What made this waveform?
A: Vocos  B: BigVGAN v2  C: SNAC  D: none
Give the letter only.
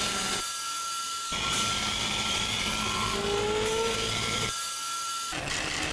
D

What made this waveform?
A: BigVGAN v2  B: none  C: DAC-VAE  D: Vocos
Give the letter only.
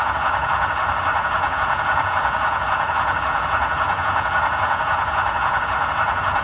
D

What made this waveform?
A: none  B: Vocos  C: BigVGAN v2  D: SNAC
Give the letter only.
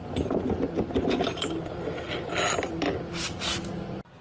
A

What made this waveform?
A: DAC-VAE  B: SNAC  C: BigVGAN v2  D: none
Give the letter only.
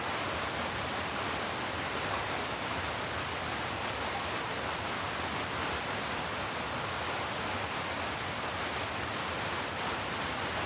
D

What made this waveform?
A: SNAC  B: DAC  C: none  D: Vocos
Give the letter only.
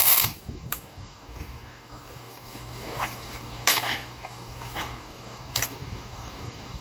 B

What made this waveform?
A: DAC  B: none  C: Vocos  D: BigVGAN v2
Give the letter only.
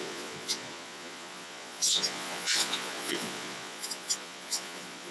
C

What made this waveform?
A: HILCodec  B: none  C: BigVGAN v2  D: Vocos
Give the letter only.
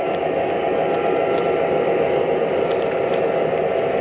B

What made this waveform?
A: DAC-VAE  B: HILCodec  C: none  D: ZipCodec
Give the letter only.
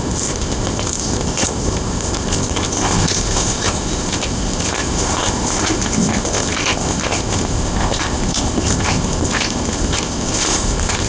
D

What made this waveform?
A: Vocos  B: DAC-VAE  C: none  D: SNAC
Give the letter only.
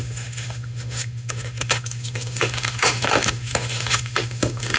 B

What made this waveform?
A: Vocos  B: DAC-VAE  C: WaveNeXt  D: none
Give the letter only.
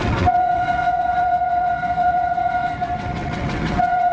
C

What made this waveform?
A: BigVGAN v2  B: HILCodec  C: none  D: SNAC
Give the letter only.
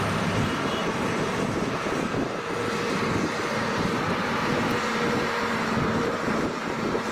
A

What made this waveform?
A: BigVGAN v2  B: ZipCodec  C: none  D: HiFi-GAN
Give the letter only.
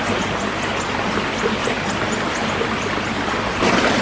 C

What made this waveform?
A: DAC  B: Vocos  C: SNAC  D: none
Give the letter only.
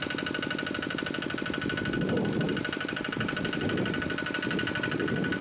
D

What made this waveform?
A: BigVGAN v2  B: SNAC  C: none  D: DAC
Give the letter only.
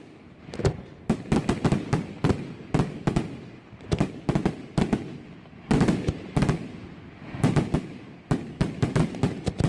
C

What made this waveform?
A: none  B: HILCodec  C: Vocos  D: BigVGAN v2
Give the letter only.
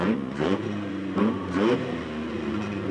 C